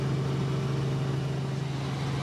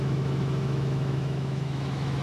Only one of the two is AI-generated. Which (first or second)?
second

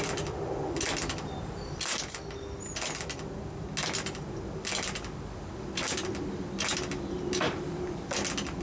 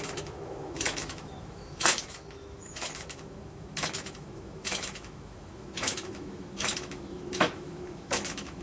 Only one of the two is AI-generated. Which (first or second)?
second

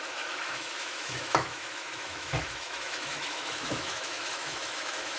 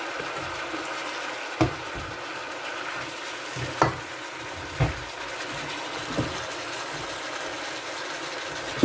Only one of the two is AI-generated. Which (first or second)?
first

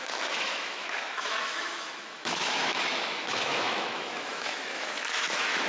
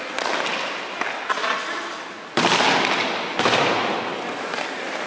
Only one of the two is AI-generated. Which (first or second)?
first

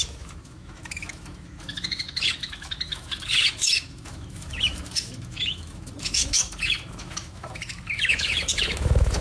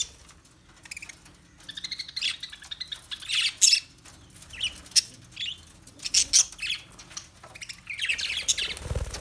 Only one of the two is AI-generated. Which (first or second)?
first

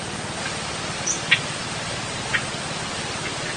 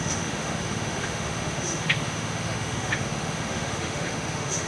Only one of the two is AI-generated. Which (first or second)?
second